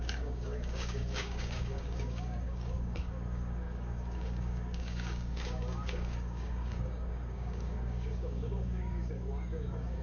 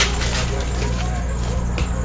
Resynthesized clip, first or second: first